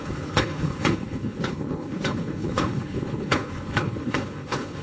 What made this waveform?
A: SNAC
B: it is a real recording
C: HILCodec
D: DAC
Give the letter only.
C